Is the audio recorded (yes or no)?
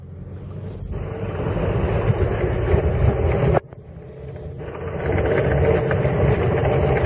yes